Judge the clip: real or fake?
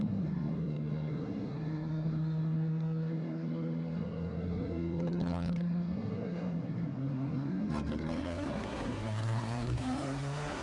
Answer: fake